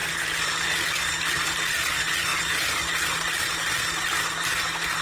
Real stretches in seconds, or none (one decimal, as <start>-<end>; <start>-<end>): 0.0-5.0